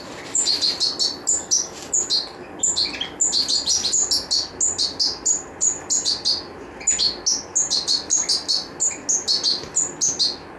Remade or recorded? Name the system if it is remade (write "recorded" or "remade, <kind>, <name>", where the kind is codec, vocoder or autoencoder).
recorded